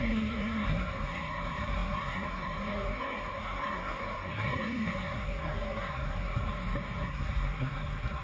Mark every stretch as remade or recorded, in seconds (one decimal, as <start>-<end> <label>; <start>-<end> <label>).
0.0-6.5 remade; 6.5-7.0 recorded; 7.0-8.2 remade